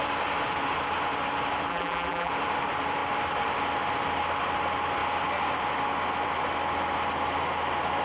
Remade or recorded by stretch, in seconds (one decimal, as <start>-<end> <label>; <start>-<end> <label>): 0.0-1.7 recorded; 1.7-2.3 remade; 2.3-8.0 recorded